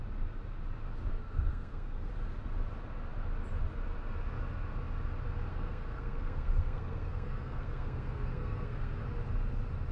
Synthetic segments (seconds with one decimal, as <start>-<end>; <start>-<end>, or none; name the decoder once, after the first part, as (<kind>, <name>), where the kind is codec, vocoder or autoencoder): 1.1-2.1 (codec, SNAC); 5.5-9.0